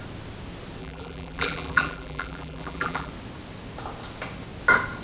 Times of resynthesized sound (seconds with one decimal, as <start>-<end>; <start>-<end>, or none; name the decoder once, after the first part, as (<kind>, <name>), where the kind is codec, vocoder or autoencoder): 0.8-3.1 (vocoder, BigVGAN v2)